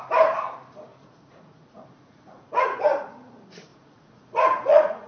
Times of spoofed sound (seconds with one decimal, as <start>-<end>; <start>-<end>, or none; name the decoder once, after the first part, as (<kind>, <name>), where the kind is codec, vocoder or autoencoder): 0.9-3.1 (vocoder, Vocos); 3.7-5.1